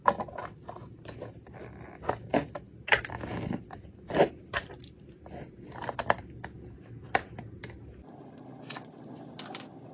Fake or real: real